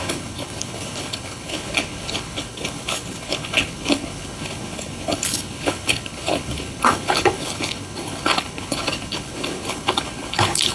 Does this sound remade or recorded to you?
remade